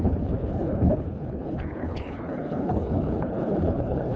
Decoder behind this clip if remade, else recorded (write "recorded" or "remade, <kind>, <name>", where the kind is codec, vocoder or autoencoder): remade, codec, HILCodec